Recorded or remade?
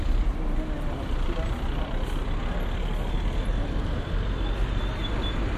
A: recorded